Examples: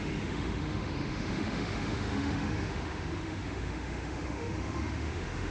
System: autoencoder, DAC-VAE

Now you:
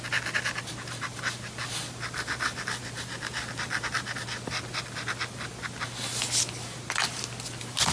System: none